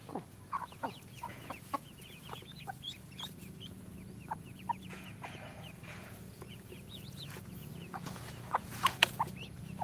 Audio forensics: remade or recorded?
remade